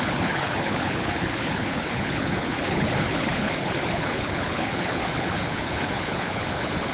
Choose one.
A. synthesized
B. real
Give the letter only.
A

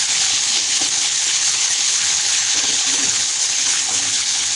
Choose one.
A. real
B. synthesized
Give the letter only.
B